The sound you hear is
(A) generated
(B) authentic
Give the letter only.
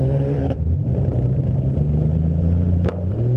A